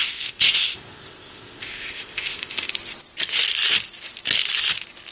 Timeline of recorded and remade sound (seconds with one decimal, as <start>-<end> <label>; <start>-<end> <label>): 0.0-2.7 remade; 2.7-5.1 recorded